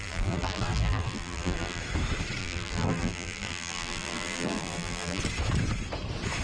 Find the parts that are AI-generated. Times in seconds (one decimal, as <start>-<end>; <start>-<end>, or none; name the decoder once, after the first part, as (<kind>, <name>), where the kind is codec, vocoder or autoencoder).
0.0-1.8 (vocoder, BigVGAN v2); 2.4-5.2